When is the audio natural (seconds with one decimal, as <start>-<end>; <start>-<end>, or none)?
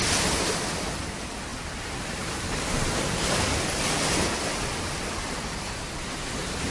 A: 0.0-6.7